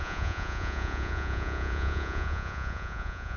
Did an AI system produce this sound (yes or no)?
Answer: yes